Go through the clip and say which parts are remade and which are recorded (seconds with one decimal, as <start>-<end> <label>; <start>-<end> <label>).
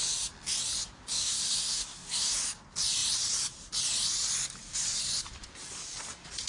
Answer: 0.0-1.1 recorded; 1.1-2.4 remade; 2.4-6.5 recorded